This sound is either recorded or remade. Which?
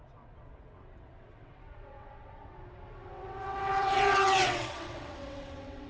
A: remade